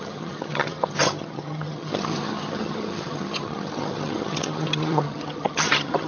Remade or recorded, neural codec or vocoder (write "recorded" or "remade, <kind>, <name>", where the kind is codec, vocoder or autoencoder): remade, vocoder, HiFi-GAN